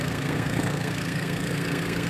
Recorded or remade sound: remade